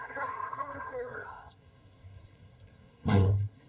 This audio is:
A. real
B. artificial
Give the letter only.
B